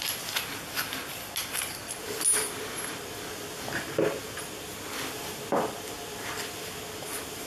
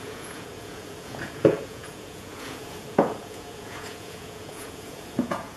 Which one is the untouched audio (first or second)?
first